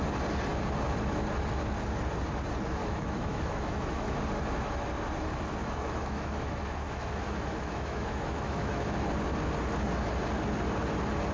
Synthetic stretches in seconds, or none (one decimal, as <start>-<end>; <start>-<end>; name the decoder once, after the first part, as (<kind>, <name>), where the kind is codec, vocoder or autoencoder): 2.8-4.2 (autoencoder, DAC-VAE); 5.6-9.1